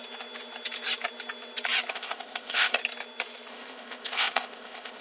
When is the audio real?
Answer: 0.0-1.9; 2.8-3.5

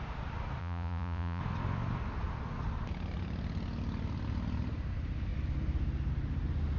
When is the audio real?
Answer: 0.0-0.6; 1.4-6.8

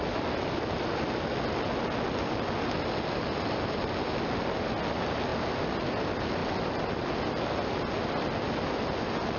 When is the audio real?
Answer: 0.0-9.4

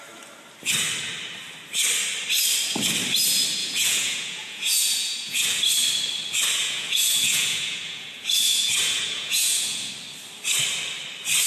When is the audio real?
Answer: 0.0-3.6; 5.6-6.6; 9.9-11.5

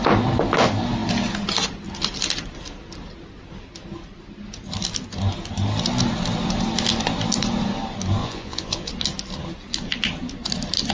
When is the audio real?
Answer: 0.0-8.2; 8.9-10.9